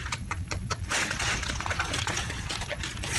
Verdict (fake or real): fake